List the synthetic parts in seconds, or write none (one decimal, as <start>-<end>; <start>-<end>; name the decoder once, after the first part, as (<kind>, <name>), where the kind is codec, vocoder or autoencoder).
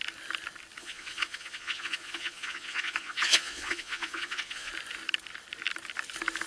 0.8-4.7 (vocoder, Vocos)